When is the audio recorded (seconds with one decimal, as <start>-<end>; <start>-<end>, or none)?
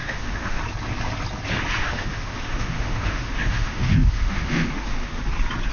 0.6-1.8; 5.2-5.7